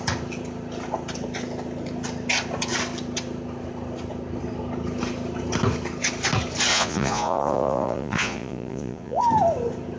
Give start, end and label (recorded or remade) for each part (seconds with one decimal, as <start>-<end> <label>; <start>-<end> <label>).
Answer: 0.0-6.7 recorded; 6.7-9.2 remade; 9.2-10.0 recorded